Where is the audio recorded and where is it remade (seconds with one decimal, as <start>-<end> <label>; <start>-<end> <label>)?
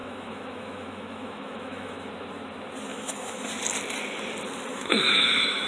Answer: 0.0-2.1 remade; 2.1-2.9 recorded; 2.9-3.5 remade; 3.5-4.7 recorded; 4.7-5.7 remade